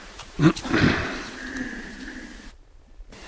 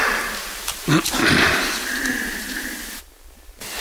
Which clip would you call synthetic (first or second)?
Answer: first